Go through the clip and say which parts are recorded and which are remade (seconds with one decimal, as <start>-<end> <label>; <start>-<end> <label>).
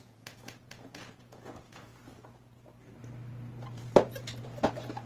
0.0-1.9 remade; 1.9-5.1 recorded